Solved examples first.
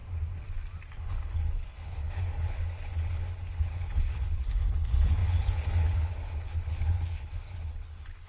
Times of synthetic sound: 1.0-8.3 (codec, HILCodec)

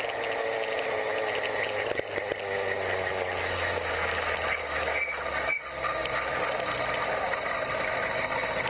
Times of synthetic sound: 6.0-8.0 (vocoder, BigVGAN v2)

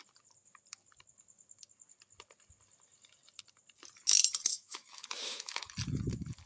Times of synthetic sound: 4.5-5.6 (autoencoder, DAC-VAE)

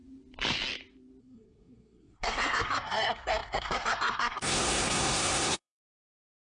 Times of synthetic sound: 1.2-6.4 (codec, SNAC)

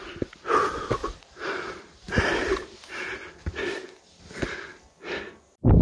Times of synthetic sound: 1.0-3.3 (vocoder, BigVGAN v2)

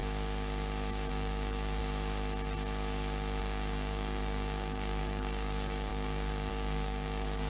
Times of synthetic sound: 1.1-1.8 (codec, DAC); 3.4-7.5